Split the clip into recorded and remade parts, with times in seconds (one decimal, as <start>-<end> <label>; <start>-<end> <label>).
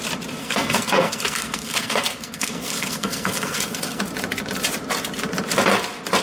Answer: 0.0-0.4 recorded; 0.4-4.0 remade; 4.0-6.2 recorded